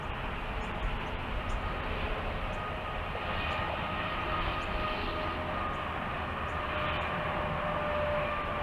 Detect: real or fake real